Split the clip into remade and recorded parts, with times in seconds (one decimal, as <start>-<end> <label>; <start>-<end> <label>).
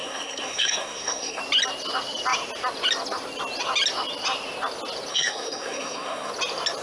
0.0-1.4 remade; 1.4-5.1 recorded; 5.1-6.3 remade; 6.3-6.8 recorded